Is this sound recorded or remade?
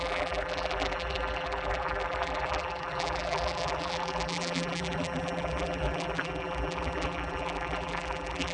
remade